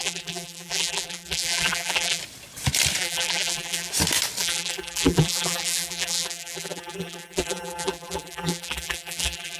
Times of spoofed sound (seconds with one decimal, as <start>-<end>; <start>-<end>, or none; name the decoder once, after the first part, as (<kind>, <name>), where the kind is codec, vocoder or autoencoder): 0.0-2.2 (vocoder, BigVGAN v2); 3.0-3.9; 4.4-9.6